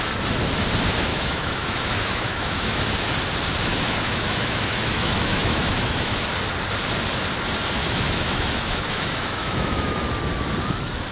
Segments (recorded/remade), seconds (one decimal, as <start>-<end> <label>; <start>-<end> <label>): 0.0-1.1 recorded; 1.1-2.8 remade; 2.8-3.7 recorded; 3.7-6.3 remade; 6.3-7.8 recorded; 7.8-10.0 remade; 10.0-11.1 recorded